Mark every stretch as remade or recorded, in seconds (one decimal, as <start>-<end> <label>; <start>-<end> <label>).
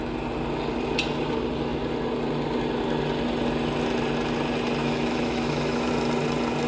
0.0-4.8 recorded; 4.8-5.9 remade; 5.9-6.7 recorded